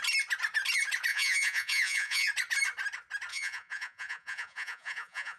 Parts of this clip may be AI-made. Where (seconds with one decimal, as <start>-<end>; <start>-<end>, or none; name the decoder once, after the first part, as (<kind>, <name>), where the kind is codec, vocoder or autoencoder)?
1.1-2.3 (vocoder, Vocos); 3.3-5.4